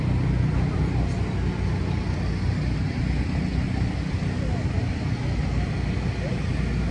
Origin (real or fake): real